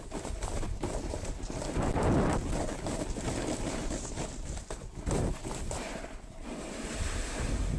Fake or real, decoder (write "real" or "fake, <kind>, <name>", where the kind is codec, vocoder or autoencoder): real